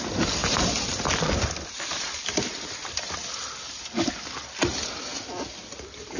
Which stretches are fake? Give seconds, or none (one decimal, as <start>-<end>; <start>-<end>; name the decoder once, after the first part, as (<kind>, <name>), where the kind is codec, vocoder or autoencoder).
none

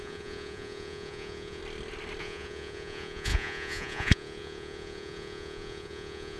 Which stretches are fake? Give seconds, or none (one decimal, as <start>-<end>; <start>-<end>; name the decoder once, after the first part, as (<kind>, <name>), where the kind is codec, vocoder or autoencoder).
0.0-1.6 (vocoder, Vocos); 2.2-6.4

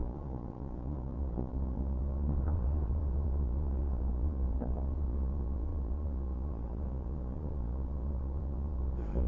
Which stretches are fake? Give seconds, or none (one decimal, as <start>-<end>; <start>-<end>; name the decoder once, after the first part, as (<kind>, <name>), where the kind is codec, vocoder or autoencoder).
0.0-9.3 (vocoder, Vocos)

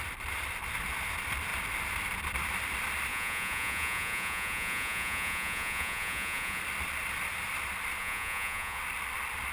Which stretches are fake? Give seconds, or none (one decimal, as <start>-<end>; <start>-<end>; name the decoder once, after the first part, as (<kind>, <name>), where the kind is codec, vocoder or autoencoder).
3.1-6.6 (vocoder, Vocos); 8.0-8.8